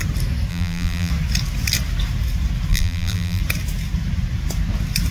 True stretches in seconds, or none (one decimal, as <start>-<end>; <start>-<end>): 0.0-0.5; 1.1-2.7; 3.4-5.1